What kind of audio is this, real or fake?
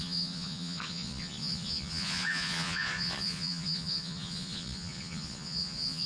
fake